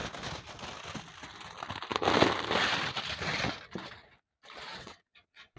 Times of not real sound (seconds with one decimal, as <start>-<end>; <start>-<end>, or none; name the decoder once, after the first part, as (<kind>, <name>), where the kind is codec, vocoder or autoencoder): 4.7-5.6 (vocoder, WaveNeXt)